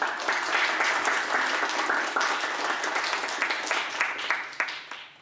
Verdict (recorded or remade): recorded